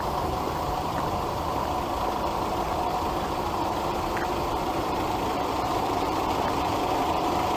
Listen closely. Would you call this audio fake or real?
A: fake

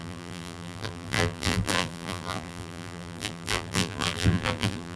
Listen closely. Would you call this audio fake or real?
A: fake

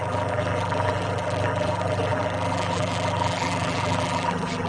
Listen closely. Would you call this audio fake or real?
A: fake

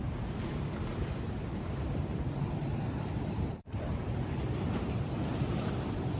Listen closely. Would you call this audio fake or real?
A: fake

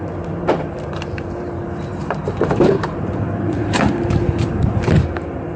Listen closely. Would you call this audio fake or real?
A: fake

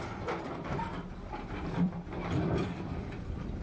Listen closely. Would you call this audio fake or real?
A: fake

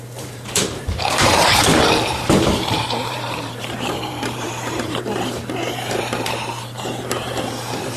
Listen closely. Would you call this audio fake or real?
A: fake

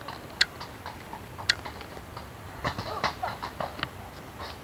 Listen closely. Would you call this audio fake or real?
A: real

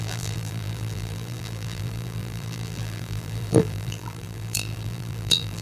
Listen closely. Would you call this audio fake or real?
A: fake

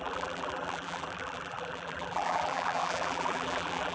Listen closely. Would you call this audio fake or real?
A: fake